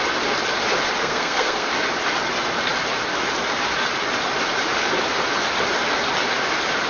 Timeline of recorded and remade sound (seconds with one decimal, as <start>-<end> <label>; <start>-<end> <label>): 0.0-1.0 recorded; 1.0-1.7 remade; 1.7-6.9 recorded

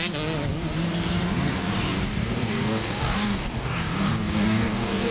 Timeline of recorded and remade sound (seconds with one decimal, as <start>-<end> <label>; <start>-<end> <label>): 0.0-2.1 recorded; 2.1-5.1 remade

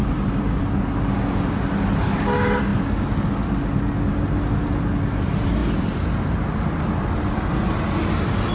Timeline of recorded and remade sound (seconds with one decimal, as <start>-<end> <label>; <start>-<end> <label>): 0.0-0.6 remade; 0.6-8.5 recorded